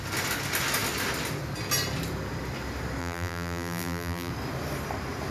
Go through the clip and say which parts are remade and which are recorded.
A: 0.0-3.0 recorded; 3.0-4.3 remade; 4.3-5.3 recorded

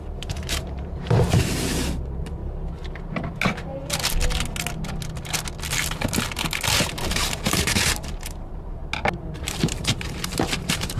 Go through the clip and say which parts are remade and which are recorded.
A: 0.0-2.4 remade; 2.4-7.1 recorded; 7.1-8.8 remade; 8.8-9.4 recorded; 9.4-11.0 remade

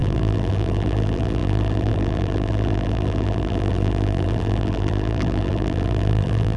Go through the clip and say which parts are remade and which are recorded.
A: 0.0-6.6 remade

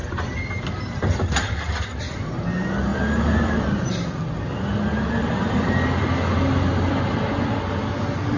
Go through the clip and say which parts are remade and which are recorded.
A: 0.0-2.9 recorded; 2.9-3.5 remade; 3.5-5.2 recorded; 5.2-6.0 remade; 6.0-6.5 recorded; 6.5-7.1 remade; 7.1-8.4 recorded

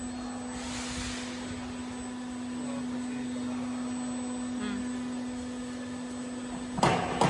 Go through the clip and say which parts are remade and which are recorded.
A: 0.0-7.3 recorded

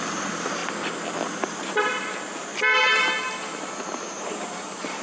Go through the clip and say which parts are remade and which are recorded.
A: 0.0-0.6 remade; 0.6-3.6 recorded; 3.6-5.0 remade

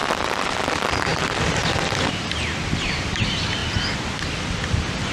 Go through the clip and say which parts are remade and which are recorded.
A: 0.0-1.1 recorded; 1.1-1.7 remade; 1.7-5.1 recorded

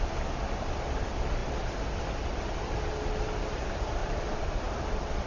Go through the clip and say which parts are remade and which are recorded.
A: 0.0-4.0 remade; 4.0-4.6 recorded; 4.6-5.3 remade